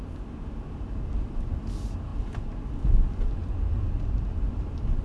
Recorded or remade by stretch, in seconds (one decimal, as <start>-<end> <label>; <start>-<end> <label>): 0.0-5.0 recorded